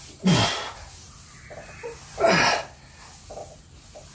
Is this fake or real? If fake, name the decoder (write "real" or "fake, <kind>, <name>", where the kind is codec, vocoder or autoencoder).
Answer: real